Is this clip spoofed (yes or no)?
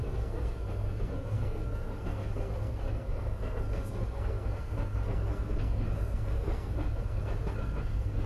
yes